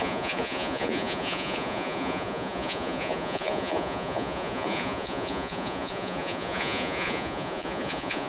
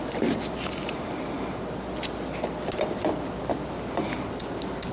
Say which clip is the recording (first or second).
second